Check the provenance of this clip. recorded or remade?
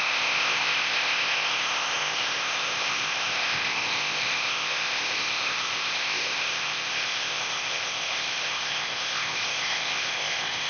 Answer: remade